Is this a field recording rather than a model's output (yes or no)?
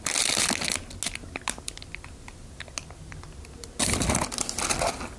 yes